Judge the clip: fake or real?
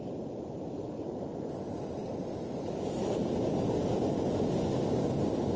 real